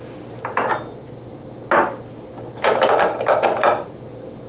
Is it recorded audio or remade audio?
recorded